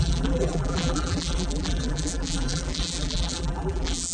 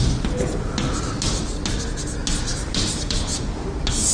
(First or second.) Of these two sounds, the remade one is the first